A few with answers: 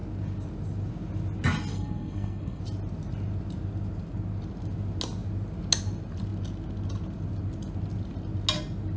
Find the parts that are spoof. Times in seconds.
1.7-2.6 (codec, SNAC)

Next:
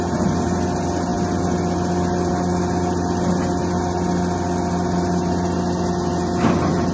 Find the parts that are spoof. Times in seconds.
none

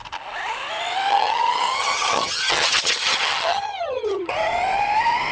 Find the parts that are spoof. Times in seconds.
1.1-4.3 (vocoder, HiFi-GAN)